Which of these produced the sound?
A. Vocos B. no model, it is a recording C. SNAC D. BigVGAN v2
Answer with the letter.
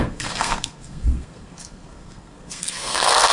C